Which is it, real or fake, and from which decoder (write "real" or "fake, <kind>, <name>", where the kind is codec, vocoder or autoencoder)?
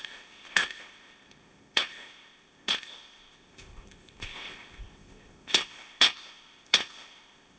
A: fake, codec, ZipCodec